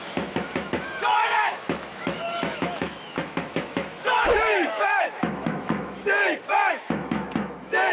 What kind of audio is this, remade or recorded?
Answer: remade